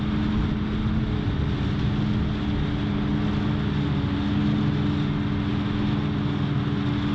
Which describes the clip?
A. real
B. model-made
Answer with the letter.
A